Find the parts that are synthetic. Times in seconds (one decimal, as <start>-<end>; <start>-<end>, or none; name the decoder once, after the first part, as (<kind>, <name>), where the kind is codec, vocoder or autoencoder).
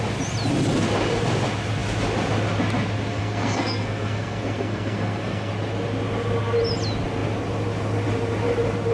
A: 3.1-5.5 (codec, SNAC)